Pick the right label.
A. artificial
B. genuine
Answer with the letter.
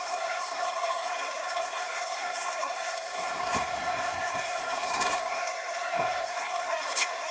A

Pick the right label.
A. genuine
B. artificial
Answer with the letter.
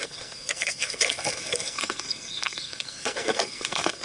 B